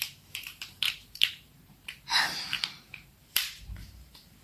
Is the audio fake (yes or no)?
yes